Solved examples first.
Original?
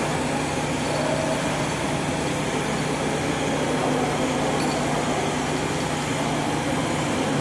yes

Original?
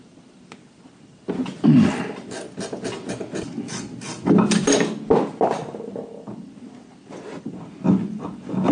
yes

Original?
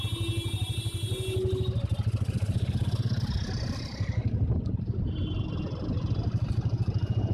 yes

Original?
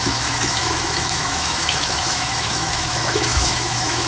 no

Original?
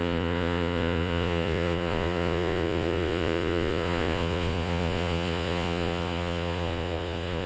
no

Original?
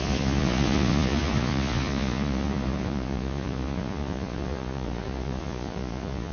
no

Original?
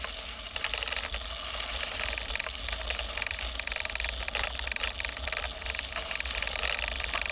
yes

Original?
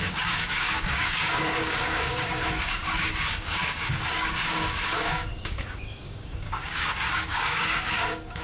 no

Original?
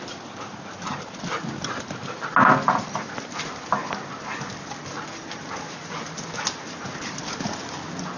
yes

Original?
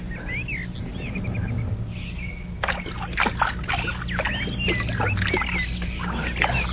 yes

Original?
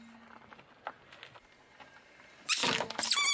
yes